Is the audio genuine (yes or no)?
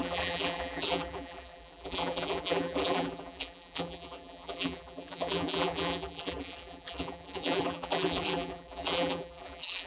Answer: no